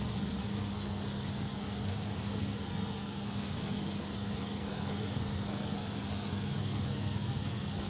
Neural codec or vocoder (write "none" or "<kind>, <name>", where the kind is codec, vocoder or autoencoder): codec, SNAC